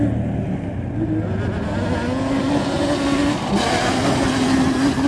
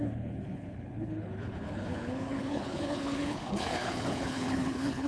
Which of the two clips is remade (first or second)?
second